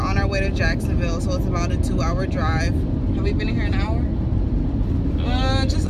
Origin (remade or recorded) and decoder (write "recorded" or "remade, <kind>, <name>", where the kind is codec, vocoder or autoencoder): recorded